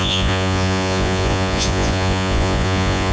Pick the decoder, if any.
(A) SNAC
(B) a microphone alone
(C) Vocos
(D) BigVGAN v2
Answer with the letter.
C